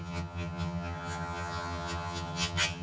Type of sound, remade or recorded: remade